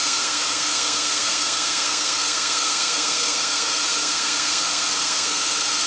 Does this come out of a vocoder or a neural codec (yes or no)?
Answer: yes